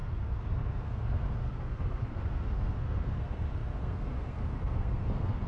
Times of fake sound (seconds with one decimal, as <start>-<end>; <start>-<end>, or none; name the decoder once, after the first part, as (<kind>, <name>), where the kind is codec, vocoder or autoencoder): 0.0-5.5 (codec, SNAC)